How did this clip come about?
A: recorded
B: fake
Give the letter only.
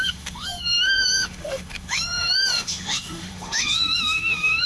B